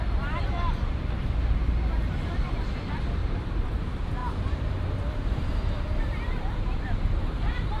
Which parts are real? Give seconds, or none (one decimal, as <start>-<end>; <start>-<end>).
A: 0.0-3.2; 3.8-4.2; 4.7-5.2